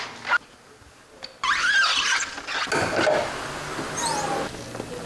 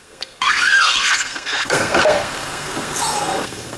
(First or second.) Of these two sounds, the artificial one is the second